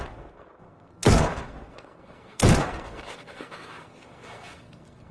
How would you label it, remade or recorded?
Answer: remade